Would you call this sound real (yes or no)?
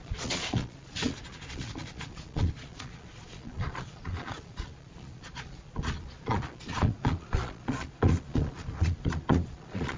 no